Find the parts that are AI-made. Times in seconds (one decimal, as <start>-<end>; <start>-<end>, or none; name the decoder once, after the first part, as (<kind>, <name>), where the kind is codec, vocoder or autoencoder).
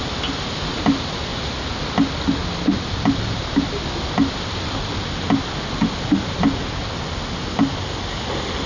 none